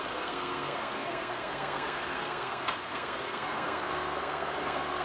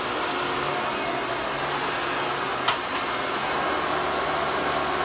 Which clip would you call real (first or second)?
second